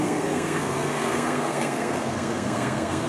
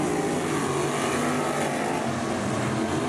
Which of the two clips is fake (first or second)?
first